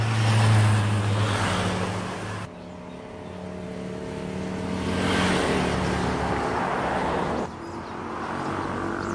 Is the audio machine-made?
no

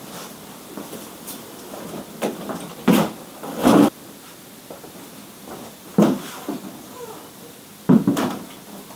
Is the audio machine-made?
yes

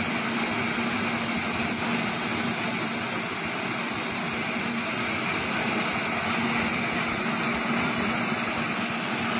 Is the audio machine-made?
no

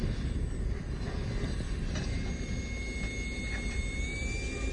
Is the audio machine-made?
no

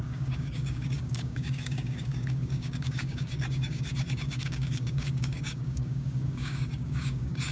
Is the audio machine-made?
yes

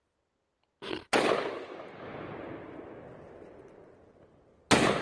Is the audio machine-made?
no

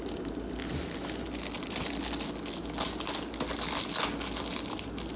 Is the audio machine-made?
no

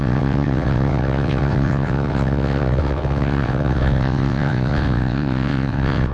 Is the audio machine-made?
yes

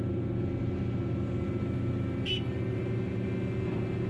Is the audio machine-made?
no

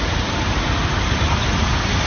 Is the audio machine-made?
no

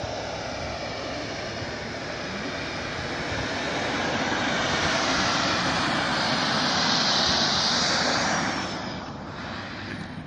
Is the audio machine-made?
no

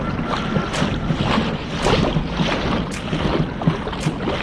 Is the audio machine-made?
no